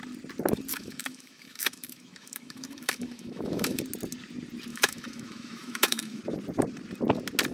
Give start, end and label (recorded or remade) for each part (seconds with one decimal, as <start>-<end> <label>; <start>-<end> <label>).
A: 0.0-0.7 recorded; 0.7-3.8 remade; 3.8-4.7 recorded; 4.7-6.2 remade; 6.2-7.5 recorded